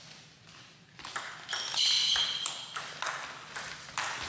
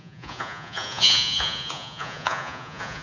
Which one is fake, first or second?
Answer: second